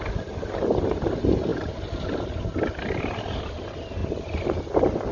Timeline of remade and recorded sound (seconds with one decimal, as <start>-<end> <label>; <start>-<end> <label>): 0.0-5.1 recorded